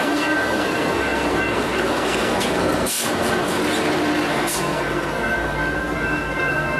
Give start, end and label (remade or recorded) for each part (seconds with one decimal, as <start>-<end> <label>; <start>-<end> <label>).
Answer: 0.0-3.6 remade; 3.6-4.3 recorded; 4.3-6.8 remade